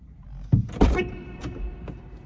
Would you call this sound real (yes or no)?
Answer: yes